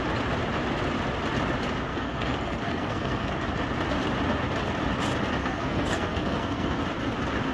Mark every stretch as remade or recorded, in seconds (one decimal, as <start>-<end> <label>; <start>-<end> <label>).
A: 0.0-1.9 recorded; 1.9-3.3 remade; 3.3-5.4 recorded; 5.4-6.8 remade; 6.8-7.5 recorded